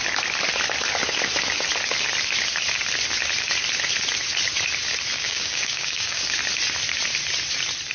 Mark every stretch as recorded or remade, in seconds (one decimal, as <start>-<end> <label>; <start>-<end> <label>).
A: 0.0-5.1 recorded; 5.1-6.4 remade; 6.4-7.9 recorded

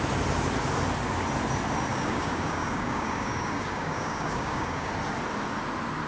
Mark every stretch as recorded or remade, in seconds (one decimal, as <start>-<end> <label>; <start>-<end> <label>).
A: 0.0-1.9 recorded; 1.9-4.9 remade; 4.9-6.1 recorded

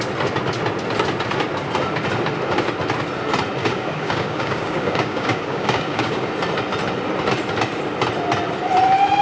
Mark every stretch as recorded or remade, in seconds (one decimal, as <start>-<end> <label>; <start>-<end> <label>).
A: 0.0-3.6 recorded; 3.6-6.3 remade; 6.3-9.2 recorded

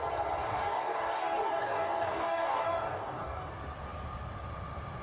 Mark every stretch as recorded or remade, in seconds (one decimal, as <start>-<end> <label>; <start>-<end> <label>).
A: 0.0-0.5 recorded; 0.5-3.5 remade; 3.5-5.0 recorded